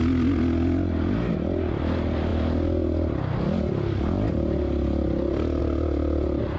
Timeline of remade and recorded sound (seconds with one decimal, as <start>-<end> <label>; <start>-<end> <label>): 0.0-6.6 recorded